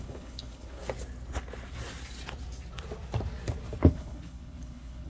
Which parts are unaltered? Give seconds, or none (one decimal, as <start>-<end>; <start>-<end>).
0.8-3.9